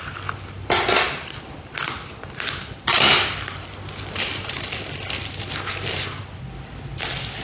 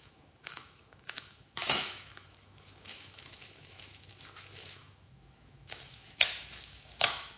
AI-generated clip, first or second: second